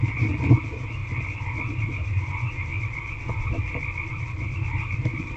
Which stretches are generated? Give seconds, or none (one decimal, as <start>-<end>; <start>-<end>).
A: 0.0-1.0; 1.8-2.7; 4.1-5.4